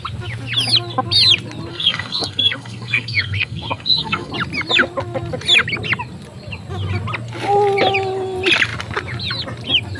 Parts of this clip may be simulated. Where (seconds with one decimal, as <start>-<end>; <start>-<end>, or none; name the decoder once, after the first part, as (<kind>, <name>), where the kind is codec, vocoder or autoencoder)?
1.7-4.3 (codec, SNAC)